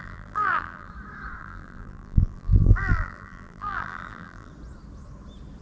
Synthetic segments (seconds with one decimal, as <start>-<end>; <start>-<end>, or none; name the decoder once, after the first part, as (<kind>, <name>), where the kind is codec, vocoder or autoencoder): 0.0-0.9 (vocoder, BigVGAN v2); 1.4-4.5